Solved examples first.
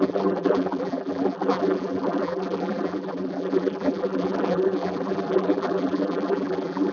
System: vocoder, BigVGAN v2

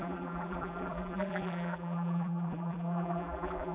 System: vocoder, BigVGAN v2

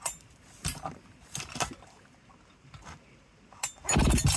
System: vocoder, BigVGAN v2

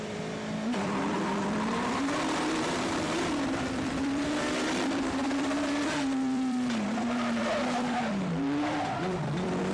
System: vocoder, BigVGAN v2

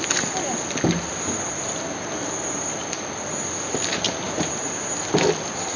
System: none